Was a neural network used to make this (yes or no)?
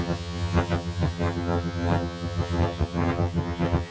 yes